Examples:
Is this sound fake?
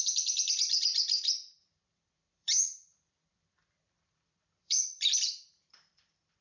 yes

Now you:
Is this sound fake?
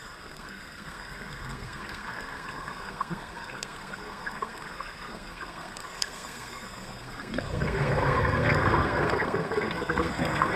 yes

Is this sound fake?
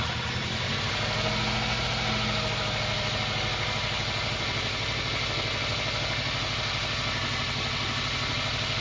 no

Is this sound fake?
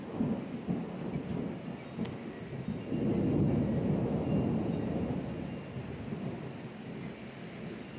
no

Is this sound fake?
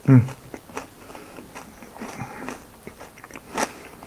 no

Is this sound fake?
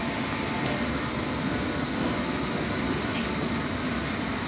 no